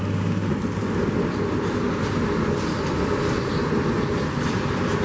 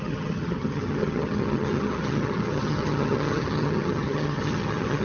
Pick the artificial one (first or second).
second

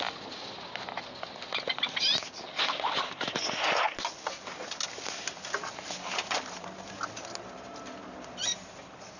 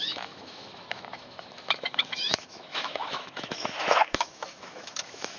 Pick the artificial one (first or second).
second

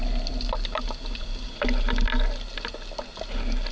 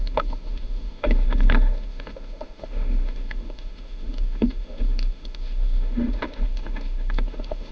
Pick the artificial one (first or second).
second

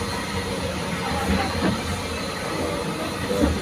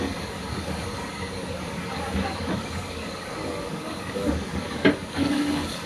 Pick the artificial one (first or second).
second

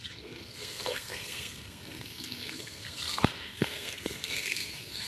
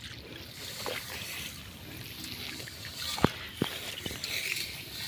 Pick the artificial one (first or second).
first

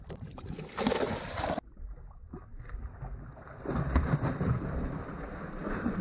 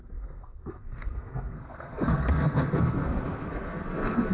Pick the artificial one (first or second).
second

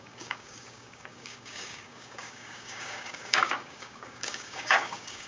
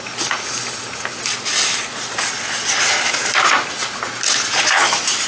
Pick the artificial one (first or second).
first